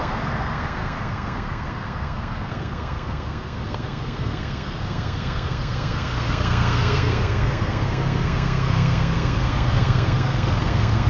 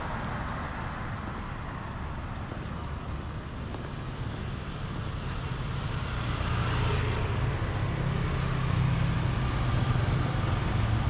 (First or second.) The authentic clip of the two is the second